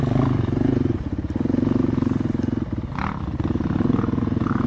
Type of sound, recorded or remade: recorded